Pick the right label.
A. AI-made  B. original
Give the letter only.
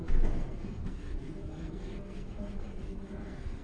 A